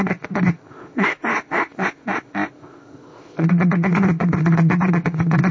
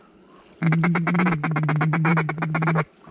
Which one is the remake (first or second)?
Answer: first